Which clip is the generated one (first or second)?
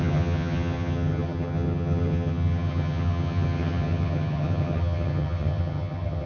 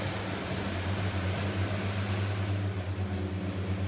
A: first